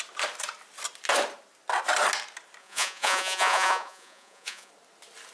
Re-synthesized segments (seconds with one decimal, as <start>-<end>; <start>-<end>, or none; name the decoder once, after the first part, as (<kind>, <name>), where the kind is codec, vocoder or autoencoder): 2.6-4.7 (vocoder, Vocos)